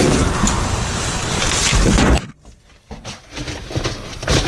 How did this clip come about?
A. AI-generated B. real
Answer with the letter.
B